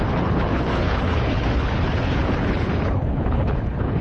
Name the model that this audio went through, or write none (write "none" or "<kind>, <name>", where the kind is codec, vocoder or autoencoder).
codec, HILCodec